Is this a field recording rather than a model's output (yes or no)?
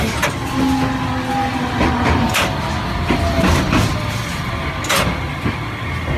yes